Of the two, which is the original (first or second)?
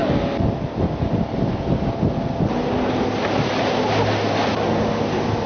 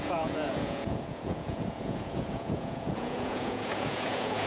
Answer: first